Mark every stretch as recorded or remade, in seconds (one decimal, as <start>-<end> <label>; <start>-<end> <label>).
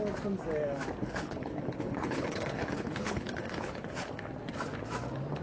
0.0-1.0 recorded; 1.0-4.2 remade; 4.2-5.4 recorded